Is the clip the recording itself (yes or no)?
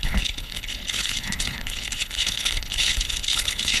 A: no